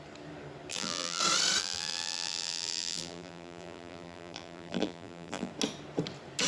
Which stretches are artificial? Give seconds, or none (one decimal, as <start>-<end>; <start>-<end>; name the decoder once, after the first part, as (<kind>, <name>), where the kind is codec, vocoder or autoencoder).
0.7-1.2 (vocoder, BigVGAN v2); 1.6-5.5